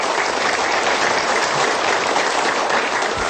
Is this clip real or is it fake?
fake